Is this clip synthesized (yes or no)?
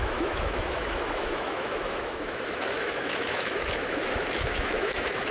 yes